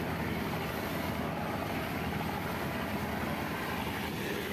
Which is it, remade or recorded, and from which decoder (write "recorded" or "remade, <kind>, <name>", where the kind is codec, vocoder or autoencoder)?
recorded